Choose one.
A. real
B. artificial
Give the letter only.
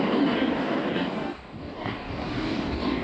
B